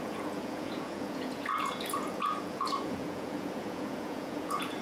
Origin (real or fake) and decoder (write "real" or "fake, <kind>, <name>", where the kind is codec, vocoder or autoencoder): fake, vocoder, Vocos